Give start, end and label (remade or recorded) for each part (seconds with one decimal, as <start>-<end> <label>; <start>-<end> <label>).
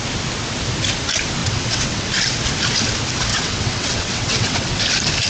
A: 0.0-1.4 recorded; 1.4-2.1 remade; 2.1-3.3 recorded; 3.3-4.8 remade; 4.8-5.3 recorded